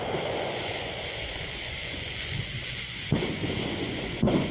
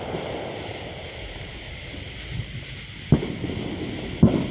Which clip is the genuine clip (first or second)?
second